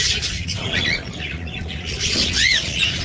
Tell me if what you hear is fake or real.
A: fake